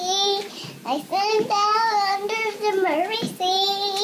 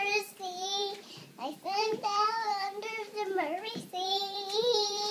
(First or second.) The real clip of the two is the first